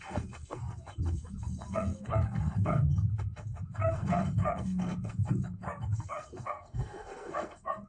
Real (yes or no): no